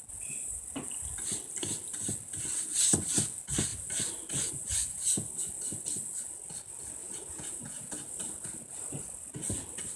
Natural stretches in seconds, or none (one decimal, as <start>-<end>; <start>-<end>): 0.0-7.0; 8.0-10.0